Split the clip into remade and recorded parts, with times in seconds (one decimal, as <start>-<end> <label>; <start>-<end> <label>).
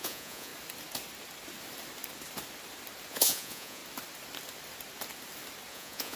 0.0-0.5 remade; 0.5-3.1 recorded; 3.1-3.8 remade; 3.8-5.7 recorded; 5.7-6.2 remade